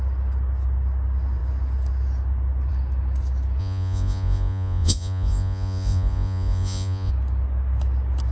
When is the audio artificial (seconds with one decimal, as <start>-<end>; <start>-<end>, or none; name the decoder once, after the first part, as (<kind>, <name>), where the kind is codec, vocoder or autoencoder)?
3.6-7.1 (vocoder, Vocos)